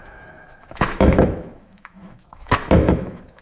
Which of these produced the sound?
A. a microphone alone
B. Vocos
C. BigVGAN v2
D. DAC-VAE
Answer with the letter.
D